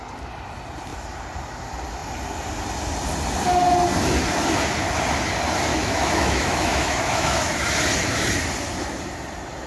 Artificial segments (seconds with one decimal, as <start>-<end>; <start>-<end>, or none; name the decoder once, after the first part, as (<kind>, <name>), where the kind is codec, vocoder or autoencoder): 5.7-7.7 (autoencoder, DAC-VAE)